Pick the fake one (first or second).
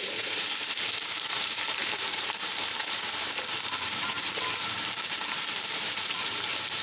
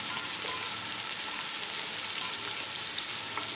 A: first